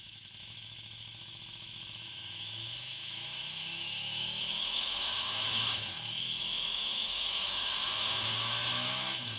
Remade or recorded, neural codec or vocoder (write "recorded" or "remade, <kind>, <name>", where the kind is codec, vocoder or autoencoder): remade, autoencoder, DAC-VAE